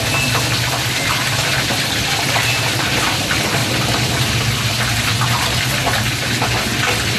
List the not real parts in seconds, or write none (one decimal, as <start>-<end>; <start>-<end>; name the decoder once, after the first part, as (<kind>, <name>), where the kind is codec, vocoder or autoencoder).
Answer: 0.0-3.6 (vocoder, BigVGAN v2); 5.4-7.2